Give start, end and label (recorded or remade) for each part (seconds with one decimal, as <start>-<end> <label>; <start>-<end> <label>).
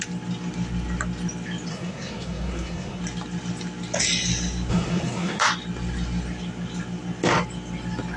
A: 0.0-1.7 recorded; 1.7-3.0 remade; 3.0-4.7 recorded; 4.7-5.4 remade; 5.4-8.2 recorded